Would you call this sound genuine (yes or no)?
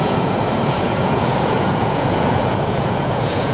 no